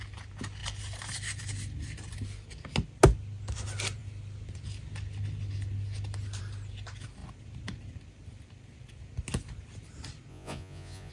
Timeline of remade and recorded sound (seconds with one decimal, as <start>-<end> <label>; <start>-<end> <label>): 0.0-10.3 recorded; 10.3-11.1 remade